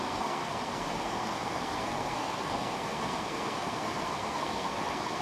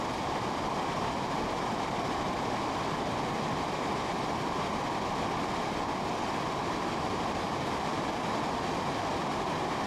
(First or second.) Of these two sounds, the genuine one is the second